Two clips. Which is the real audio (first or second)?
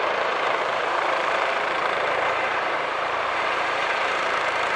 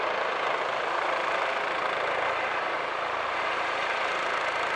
second